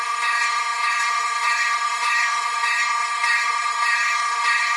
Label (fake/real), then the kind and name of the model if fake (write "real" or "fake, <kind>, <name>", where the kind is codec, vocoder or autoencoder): fake, codec, HILCodec